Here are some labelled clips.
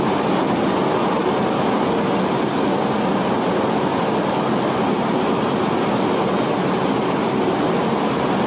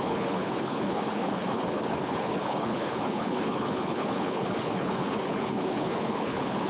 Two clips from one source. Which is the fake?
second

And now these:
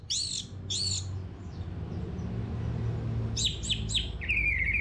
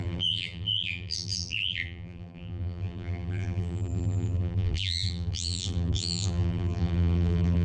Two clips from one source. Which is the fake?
second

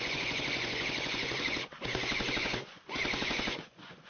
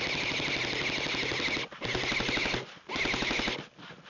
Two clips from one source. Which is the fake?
first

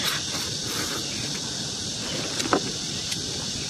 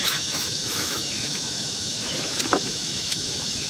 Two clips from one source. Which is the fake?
second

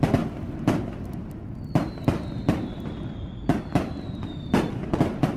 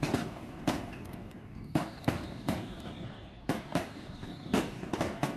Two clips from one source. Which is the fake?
second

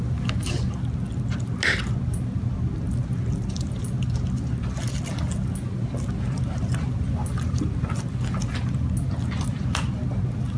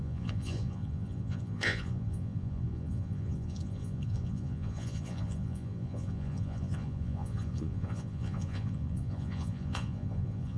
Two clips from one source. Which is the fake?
second